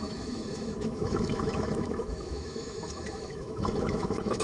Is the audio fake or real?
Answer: fake